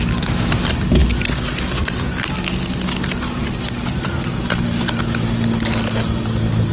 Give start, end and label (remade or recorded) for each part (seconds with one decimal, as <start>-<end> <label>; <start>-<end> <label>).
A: 0.0-6.7 recorded